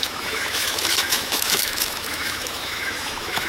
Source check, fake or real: fake